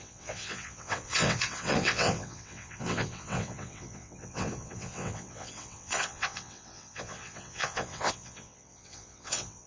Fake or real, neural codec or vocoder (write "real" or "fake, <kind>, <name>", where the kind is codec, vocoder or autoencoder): fake, vocoder, WaveNeXt